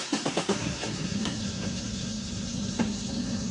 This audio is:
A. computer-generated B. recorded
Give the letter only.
A